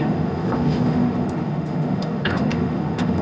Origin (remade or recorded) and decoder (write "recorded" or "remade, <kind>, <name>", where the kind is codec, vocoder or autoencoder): remade, autoencoder, DAC-VAE